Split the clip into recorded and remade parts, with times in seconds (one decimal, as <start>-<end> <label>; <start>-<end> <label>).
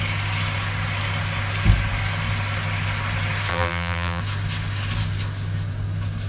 0.0-3.5 recorded; 3.5-4.2 remade; 4.2-6.3 recorded